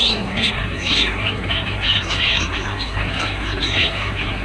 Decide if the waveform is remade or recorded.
remade